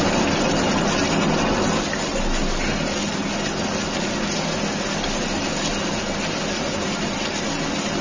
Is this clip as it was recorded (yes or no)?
yes